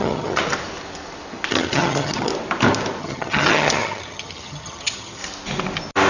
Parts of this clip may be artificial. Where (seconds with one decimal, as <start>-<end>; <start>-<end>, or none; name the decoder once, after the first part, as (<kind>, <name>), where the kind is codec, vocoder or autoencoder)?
0.0-0.4 (vocoder, HiFi-GAN); 1.5-2.3; 3.0-5.2